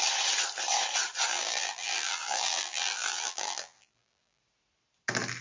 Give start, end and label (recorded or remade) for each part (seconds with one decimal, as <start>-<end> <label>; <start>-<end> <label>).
0.0-1.3 recorded; 1.3-4.4 remade; 4.4-5.4 recorded